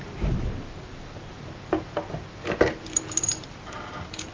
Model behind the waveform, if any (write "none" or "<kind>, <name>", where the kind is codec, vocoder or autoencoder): none